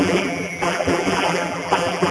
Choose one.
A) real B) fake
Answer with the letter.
B